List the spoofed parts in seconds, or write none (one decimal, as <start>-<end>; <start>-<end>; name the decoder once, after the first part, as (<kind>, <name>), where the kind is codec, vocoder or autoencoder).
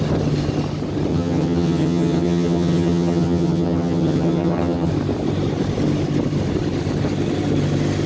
1.1-4.9 (vocoder, HiFi-GAN)